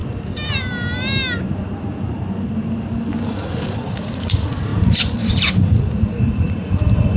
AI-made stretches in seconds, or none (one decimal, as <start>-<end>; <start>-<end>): 3.3-7.2